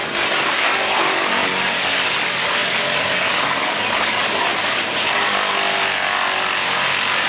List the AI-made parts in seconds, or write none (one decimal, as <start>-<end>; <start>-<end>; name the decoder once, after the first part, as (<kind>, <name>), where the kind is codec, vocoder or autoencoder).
0.0-4.5 (codec, DAC)

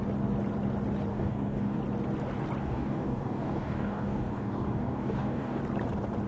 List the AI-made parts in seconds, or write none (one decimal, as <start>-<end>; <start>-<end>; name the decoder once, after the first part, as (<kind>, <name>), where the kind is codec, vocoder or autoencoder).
1.1-1.8 (codec, DAC); 2.6-5.6